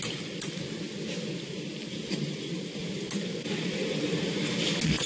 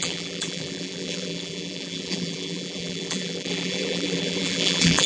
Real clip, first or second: first